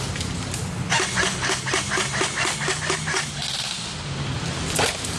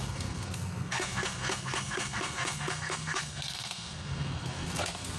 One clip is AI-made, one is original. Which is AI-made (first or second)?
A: second